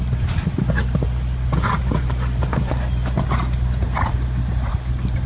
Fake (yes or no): no